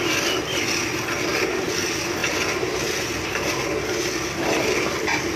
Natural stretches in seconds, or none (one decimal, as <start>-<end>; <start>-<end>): 0.0-5.4